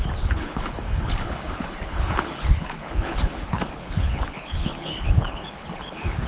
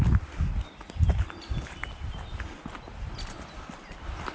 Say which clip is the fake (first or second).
first